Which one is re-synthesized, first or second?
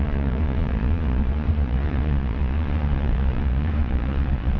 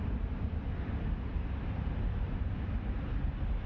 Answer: first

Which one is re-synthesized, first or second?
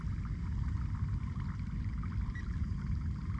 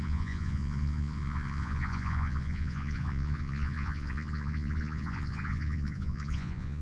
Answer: second